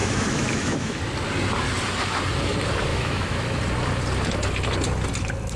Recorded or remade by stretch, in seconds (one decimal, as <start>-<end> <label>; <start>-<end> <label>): 0.0-1.0 remade; 1.0-2.9 recorded; 2.9-3.6 remade; 3.6-5.6 recorded